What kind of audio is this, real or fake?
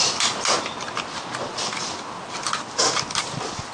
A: real